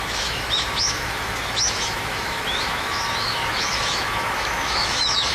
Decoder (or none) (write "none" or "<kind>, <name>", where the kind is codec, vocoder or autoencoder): autoencoder, DAC-VAE